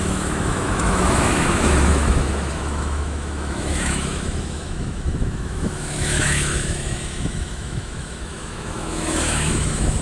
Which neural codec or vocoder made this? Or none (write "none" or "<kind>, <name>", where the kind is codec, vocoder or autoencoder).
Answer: autoencoder, DAC-VAE